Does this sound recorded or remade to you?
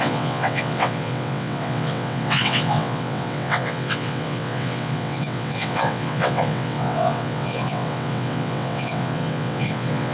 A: remade